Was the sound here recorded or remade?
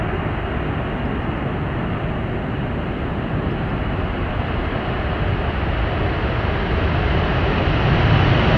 recorded